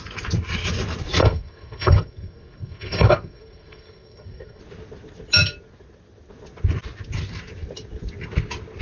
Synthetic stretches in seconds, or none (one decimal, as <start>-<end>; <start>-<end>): 1.2-4.6